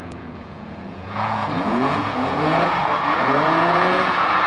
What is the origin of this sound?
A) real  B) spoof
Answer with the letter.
B